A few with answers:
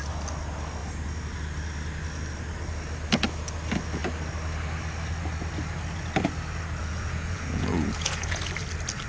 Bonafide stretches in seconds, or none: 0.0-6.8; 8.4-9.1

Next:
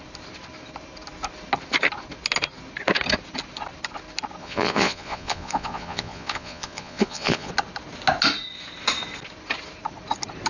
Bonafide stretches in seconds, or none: 0.0-4.4; 7.5-10.5